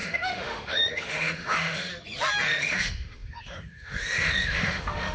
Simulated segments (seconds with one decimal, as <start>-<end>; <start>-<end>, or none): 0.0-1.9; 2.5-5.1